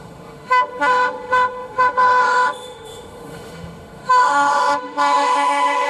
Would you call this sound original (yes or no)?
no